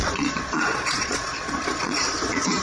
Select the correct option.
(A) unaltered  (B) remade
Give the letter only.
B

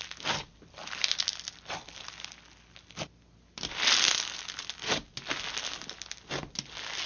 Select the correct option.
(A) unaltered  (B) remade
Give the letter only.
A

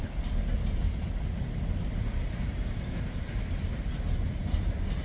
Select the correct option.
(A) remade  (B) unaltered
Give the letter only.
B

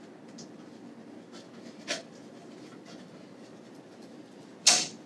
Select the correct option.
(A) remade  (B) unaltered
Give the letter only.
B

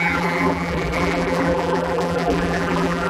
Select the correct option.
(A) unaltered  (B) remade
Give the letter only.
B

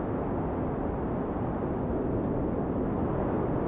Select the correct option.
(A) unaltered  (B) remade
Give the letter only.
A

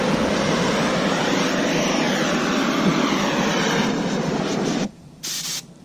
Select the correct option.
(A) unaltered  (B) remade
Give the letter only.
B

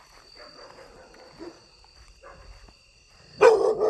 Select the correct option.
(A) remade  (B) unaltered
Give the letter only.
B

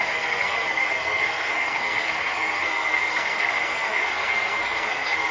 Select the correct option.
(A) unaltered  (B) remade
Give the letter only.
B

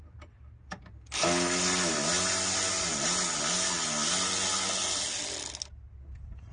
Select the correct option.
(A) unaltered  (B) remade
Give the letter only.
A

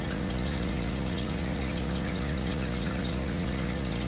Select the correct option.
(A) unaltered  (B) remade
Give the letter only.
B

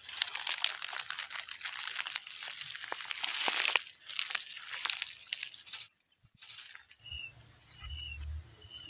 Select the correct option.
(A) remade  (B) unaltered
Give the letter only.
B